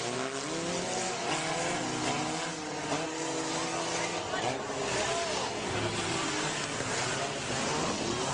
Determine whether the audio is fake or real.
real